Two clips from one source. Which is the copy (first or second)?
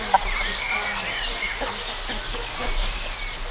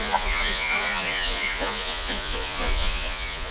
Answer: second